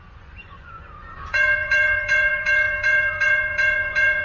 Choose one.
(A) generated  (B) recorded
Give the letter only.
A